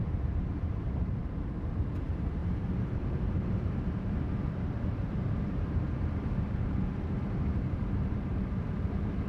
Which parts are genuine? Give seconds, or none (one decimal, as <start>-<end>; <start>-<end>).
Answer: none